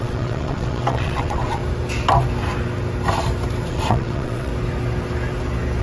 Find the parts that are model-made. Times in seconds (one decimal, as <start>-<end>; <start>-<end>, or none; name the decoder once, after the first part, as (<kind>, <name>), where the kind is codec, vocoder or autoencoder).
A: 0.0-1.6 (vocoder, WaveNeXt); 3.7-4.5